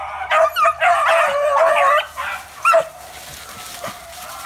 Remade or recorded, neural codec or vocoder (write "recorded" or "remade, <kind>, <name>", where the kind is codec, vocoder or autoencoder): recorded